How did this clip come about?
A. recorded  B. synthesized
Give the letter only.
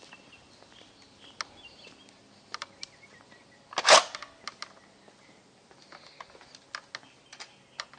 A